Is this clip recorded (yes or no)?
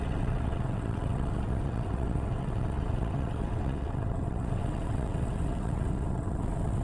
no